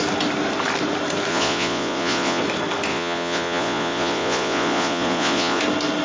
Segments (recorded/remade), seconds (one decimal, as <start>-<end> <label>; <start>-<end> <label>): 0.0-1.3 recorded; 1.3-2.4 remade; 2.4-2.9 recorded; 2.9-5.6 remade; 5.6-6.0 recorded